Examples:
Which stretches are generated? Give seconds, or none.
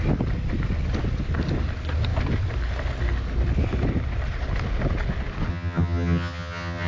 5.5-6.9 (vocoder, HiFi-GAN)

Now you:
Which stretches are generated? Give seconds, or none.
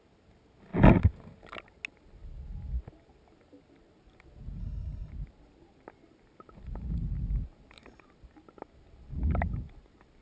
4.6-5.1 (codec, HILCodec)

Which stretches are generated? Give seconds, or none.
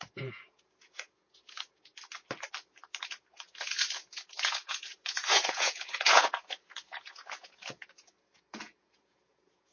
0.0-1.9 (vocoder, Vocos); 3.0-9.7